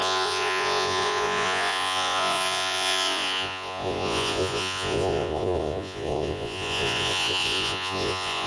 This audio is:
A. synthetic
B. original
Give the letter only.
A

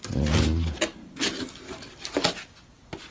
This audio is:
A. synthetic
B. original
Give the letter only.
B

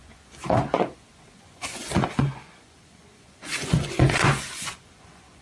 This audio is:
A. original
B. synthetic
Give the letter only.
B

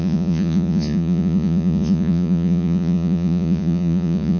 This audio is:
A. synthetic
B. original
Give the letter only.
A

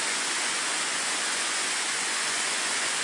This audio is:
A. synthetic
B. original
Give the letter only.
A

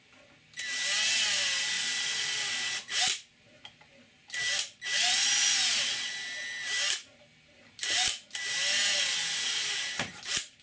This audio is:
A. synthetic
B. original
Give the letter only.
B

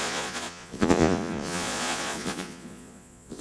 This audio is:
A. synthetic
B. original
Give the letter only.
A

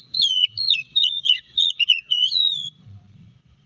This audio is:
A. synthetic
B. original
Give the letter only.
A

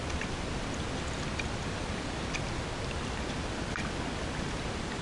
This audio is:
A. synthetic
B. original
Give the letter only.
B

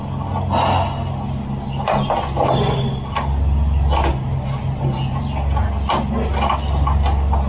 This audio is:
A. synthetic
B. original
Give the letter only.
B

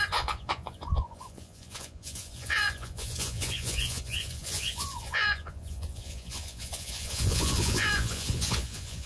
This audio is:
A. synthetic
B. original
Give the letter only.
A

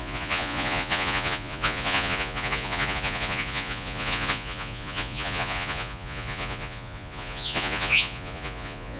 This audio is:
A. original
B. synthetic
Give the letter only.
B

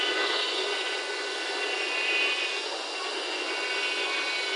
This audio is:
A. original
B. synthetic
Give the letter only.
B